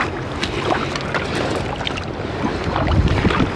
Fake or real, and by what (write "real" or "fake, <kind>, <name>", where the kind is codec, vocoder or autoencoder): real